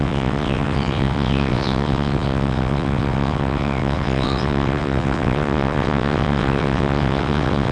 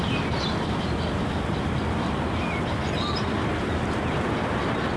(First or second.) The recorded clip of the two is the second